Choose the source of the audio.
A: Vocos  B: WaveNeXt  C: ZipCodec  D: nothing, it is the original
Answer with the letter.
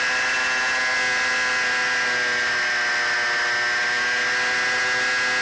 D